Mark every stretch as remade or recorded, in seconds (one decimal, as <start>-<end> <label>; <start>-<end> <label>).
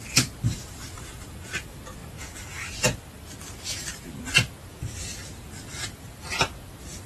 0.0-7.1 recorded